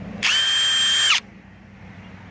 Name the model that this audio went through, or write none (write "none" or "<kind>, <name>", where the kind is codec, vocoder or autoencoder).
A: none